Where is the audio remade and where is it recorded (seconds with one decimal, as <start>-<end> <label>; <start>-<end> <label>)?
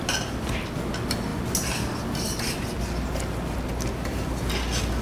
0.0-5.0 recorded